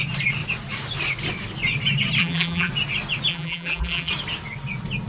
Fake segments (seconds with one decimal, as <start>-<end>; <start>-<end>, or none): 2.2-2.7; 3.3-4.1